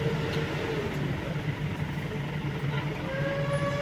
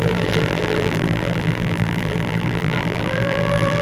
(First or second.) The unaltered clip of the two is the first